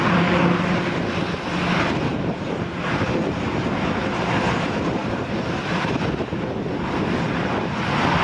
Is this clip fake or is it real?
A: real